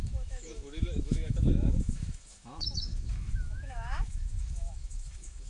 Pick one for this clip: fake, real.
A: fake